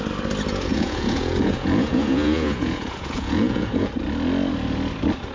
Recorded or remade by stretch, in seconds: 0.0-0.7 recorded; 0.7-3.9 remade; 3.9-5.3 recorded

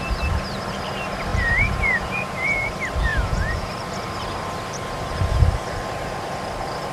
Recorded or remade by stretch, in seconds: 0.0-1.3 recorded; 1.3-2.7 remade; 2.7-3.1 recorded; 3.1-3.7 remade; 3.7-6.9 recorded

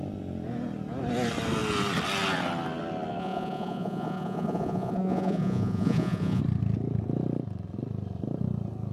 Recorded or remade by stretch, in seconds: 0.0-3.2 recorded; 3.2-6.4 remade; 6.4-8.9 recorded